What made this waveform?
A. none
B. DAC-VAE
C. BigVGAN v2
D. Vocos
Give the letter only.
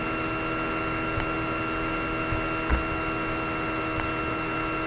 A